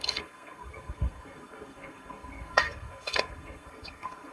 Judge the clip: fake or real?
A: fake